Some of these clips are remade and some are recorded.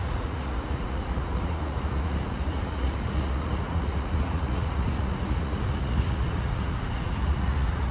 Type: remade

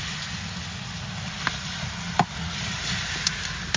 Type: recorded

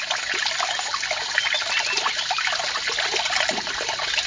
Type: recorded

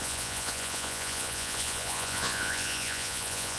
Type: remade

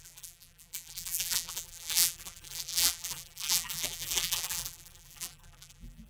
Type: remade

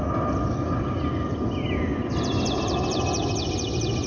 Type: recorded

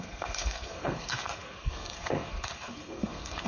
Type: remade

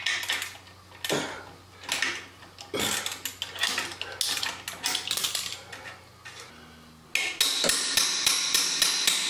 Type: recorded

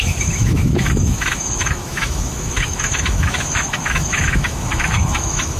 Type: remade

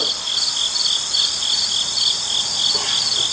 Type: recorded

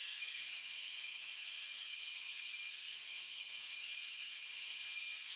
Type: remade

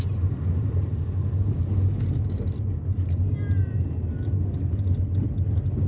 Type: recorded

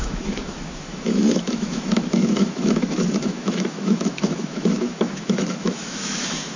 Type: remade